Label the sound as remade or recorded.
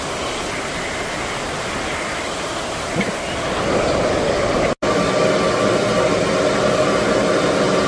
recorded